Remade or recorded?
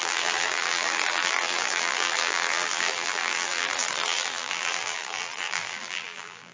remade